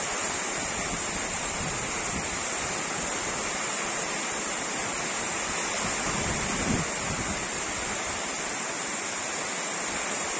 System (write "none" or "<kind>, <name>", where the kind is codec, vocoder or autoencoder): none